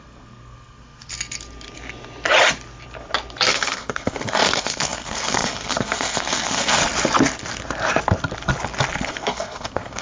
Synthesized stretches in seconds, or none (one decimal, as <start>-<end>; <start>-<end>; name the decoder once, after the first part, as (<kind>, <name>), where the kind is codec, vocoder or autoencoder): 0.0-1.1 (codec, SNAC); 3.5-6.8; 9.1-10.0